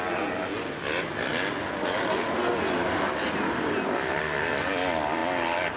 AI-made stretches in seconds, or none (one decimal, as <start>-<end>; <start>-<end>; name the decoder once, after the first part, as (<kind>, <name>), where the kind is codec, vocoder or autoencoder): none